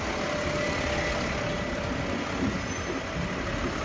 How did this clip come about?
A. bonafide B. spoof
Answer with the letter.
A